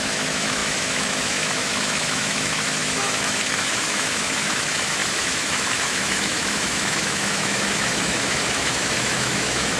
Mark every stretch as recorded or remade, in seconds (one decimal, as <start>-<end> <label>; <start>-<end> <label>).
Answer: 0.0-9.8 remade